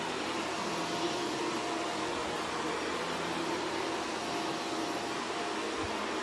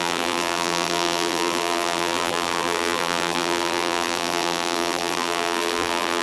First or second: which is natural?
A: first